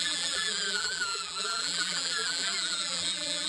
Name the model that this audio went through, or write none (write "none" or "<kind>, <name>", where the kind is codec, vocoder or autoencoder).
vocoder, BigVGAN v2